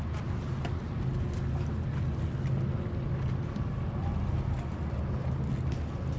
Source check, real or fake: real